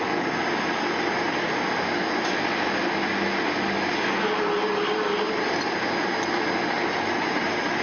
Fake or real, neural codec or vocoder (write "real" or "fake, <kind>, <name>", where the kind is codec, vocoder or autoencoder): real